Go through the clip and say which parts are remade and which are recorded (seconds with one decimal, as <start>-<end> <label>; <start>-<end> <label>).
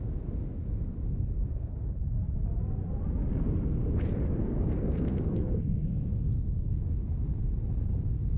0.0-4.4 recorded; 4.4-6.1 remade; 6.1-8.4 recorded